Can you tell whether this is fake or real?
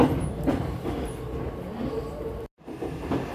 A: real